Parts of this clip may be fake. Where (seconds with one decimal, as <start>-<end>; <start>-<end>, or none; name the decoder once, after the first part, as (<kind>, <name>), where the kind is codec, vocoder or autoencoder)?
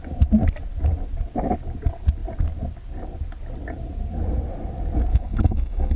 5.1-6.0 (codec, DAC)